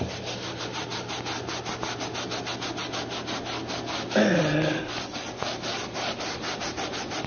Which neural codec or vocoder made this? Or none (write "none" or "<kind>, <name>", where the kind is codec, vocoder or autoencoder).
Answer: none